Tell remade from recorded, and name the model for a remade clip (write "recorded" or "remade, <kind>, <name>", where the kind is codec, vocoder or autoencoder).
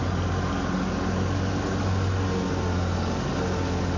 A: recorded